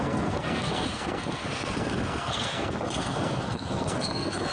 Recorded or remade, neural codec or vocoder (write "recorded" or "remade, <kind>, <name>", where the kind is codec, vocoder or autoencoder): remade, codec, SNAC